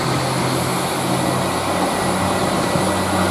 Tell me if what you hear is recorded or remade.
recorded